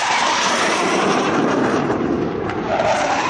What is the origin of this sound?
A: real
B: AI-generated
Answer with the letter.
B